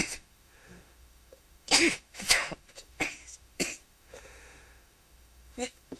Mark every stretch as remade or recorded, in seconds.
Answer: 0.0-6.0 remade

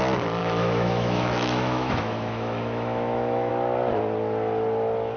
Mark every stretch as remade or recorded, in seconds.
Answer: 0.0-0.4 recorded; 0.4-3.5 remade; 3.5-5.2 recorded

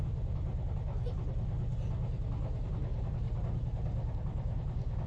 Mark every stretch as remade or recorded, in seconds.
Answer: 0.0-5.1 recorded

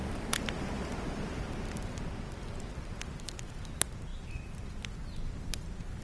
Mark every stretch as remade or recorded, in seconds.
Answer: 0.0-6.0 recorded